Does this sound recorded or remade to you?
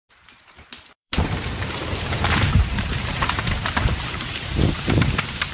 remade